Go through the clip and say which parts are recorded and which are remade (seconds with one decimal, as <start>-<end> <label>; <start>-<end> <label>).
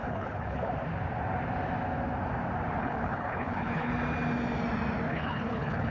0.0-0.7 remade; 0.7-2.8 recorded; 2.8-3.9 remade; 3.9-5.1 recorded; 5.1-5.9 remade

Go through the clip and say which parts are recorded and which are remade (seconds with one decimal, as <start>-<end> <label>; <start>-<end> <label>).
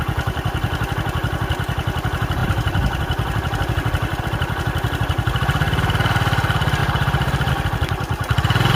0.0-6.8 recorded; 6.8-7.5 remade; 7.5-8.8 recorded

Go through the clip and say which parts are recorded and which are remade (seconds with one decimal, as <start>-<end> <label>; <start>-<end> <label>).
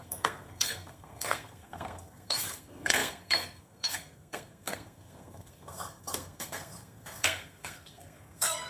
0.0-8.7 remade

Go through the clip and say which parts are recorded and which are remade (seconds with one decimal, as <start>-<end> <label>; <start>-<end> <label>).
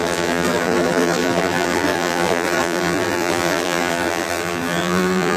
0.0-5.4 remade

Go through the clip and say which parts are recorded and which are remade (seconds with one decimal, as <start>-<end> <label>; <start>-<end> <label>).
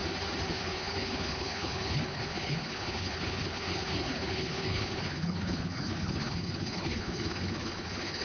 0.0-0.5 recorded; 0.5-8.2 remade